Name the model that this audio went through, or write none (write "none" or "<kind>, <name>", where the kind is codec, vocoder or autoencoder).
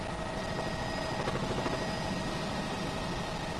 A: none